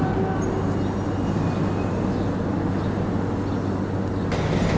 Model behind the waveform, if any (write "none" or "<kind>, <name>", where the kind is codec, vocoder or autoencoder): none